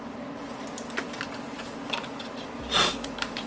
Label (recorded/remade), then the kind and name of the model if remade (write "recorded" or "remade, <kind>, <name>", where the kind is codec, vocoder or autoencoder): recorded